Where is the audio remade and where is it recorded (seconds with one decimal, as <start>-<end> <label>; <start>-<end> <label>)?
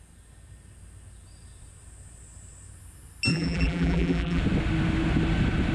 0.0-3.3 recorded; 3.3-4.4 remade; 4.4-5.7 recorded